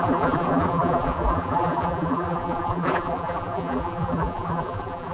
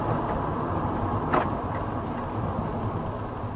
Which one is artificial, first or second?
first